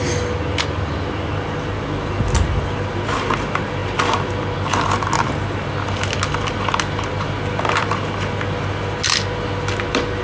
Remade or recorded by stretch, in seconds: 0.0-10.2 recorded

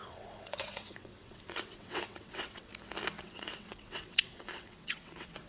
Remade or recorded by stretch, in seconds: 0.0-2.7 remade; 2.7-3.2 recorded; 3.2-5.5 remade

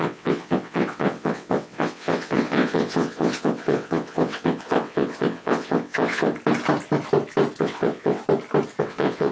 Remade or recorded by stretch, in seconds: 0.0-6.3 remade; 6.3-7.6 recorded; 7.6-8.2 remade; 8.2-8.8 recorded; 8.8-9.3 remade

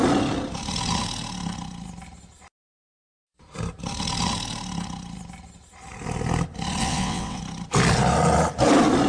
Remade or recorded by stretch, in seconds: 0.0-6.8 recorded; 6.8-7.4 remade; 7.4-9.1 recorded

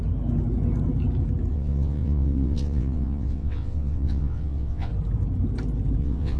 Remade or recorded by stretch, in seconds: 0.0-1.5 recorded; 1.5-4.9 remade; 4.9-6.0 recorded; 6.0-6.4 remade